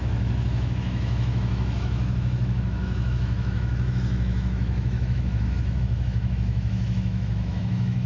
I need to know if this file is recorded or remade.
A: remade